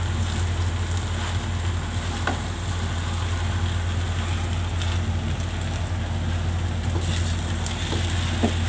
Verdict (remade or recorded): recorded